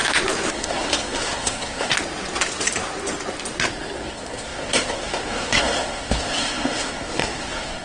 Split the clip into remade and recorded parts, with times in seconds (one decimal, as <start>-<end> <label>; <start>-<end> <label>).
0.0-0.5 recorded; 0.5-1.9 remade; 1.9-3.7 recorded; 3.7-7.8 remade